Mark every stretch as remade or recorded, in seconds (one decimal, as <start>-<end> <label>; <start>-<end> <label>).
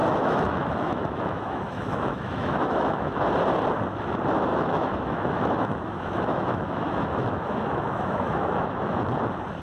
0.0-3.3 remade; 3.3-4.5 recorded; 4.5-9.0 remade; 9.0-9.6 recorded